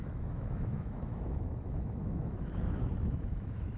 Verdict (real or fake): fake